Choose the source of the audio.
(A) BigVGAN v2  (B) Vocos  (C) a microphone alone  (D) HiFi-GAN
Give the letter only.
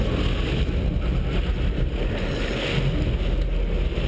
C